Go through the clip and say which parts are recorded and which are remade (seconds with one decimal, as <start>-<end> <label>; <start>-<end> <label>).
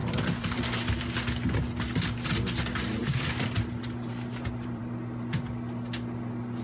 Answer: 0.0-1.0 remade; 1.0-3.0 recorded; 3.0-4.8 remade; 4.8-6.6 recorded